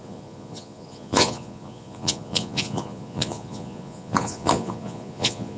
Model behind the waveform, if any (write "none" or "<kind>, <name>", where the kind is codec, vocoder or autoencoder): vocoder, Vocos